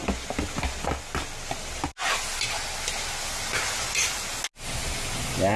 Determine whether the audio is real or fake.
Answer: real